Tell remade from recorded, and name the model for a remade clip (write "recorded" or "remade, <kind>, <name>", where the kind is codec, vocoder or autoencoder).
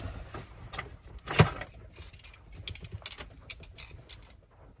recorded